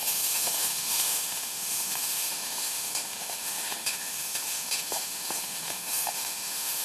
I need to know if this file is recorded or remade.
remade